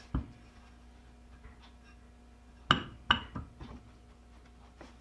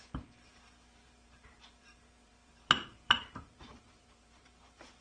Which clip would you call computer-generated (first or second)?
second